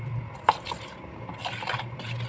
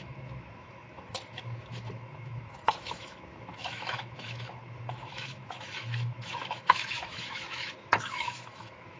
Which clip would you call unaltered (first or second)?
first